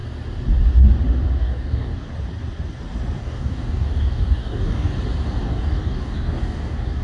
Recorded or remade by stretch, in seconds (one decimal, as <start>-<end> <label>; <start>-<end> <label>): 0.0-1.4 recorded; 1.4-2.1 remade; 2.1-3.2 recorded; 3.2-4.9 remade; 4.9-5.4 recorded; 5.4-7.0 remade